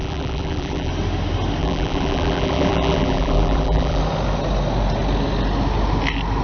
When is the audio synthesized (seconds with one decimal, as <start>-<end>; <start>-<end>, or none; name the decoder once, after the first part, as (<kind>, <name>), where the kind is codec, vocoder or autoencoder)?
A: 0.0-0.9 (vocoder, BigVGAN v2); 1.6-4.0